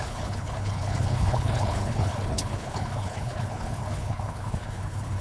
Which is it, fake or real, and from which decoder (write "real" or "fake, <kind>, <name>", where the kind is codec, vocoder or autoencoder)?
fake, codec, HILCodec